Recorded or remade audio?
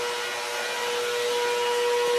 recorded